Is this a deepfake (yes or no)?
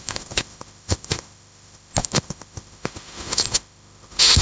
yes